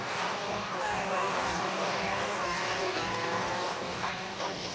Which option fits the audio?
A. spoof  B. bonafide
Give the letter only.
A